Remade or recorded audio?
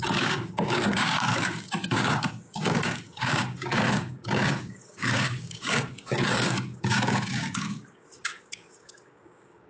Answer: remade